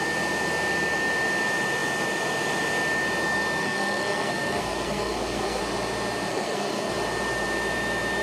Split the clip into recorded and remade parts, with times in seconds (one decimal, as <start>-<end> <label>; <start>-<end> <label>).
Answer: 0.0-3.6 recorded; 3.6-5.6 remade; 5.6-6.3 recorded; 6.3-6.9 remade; 6.9-8.2 recorded